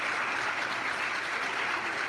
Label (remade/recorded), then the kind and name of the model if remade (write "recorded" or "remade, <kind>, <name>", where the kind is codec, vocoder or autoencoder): recorded